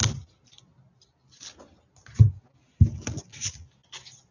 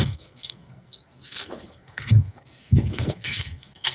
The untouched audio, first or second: first